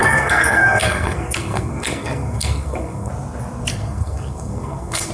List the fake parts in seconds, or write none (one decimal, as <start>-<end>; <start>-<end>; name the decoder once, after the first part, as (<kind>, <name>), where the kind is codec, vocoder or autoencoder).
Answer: 0.0-3.1 (codec, SNAC); 3.7-5.1